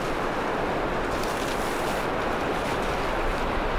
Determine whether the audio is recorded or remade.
recorded